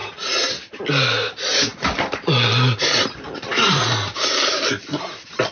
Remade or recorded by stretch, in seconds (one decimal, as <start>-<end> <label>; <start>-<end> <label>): 0.0-5.5 recorded

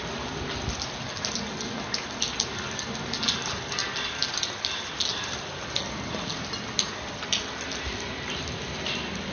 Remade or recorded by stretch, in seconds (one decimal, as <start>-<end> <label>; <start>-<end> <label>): 0.0-9.3 recorded

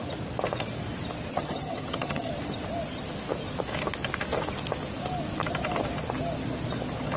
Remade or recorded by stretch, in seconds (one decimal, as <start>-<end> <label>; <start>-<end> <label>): 0.0-1.3 recorded; 1.3-2.3 remade; 2.3-7.2 recorded

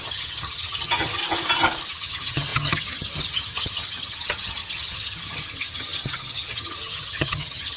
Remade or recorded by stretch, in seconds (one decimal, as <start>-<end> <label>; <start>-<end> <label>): 0.0-1.2 remade; 1.2-1.9 recorded; 1.9-7.8 remade

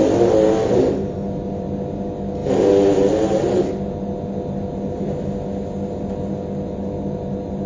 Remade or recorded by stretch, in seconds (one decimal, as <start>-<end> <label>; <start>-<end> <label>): 0.0-7.7 recorded